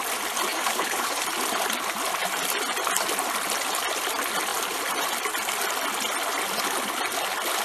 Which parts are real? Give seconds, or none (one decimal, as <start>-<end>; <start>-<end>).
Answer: 0.0-0.5; 1.2-7.6